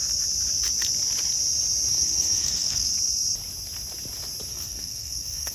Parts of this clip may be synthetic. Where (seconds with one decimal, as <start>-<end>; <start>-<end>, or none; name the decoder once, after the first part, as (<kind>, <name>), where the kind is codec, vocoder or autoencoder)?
1.9-2.9 (codec, SNAC); 4.5-5.5